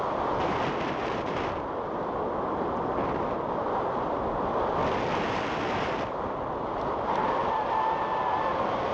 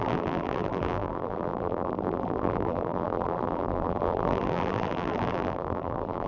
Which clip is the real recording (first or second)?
first